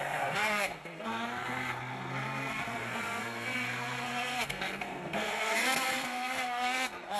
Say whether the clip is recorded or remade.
remade